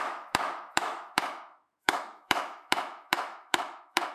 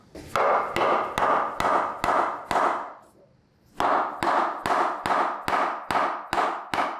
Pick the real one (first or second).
second